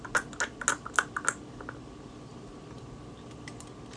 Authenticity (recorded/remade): recorded